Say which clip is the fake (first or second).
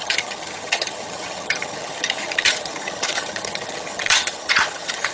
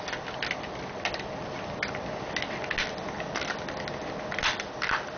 first